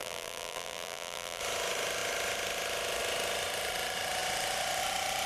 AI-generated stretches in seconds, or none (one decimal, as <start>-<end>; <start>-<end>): 0.0-1.4